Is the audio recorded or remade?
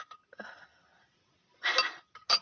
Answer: recorded